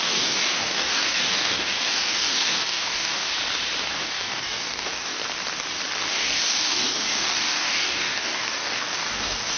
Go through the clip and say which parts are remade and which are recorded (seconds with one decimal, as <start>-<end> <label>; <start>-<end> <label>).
0.0-3.3 remade; 3.3-3.9 recorded; 3.9-5.2 remade; 5.2-6.1 recorded; 6.1-9.6 remade